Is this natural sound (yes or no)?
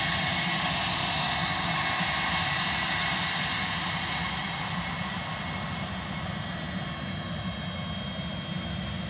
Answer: yes